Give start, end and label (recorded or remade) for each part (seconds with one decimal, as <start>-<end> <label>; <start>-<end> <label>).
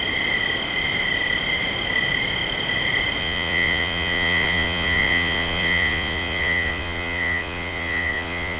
0.0-3.2 recorded; 3.2-8.6 remade